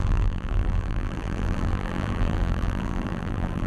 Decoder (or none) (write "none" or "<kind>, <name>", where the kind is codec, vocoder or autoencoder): vocoder, BigVGAN v2